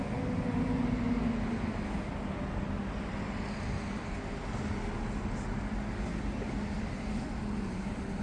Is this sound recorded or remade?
recorded